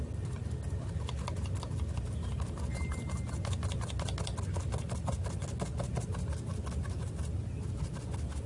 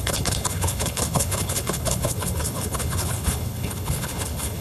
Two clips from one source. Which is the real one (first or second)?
first